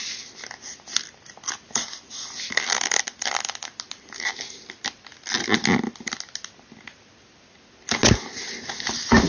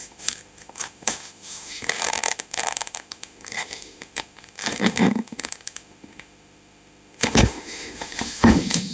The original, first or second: first